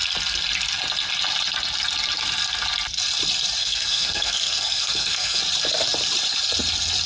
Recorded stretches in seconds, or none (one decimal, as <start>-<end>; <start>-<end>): 0.0-3.6; 5.4-7.1